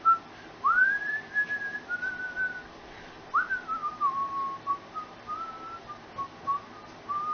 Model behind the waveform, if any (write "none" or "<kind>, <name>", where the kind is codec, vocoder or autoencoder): vocoder, BigVGAN v2